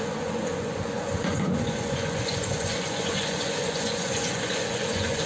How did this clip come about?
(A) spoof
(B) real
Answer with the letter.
A